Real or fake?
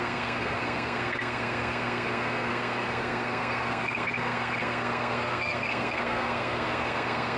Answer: fake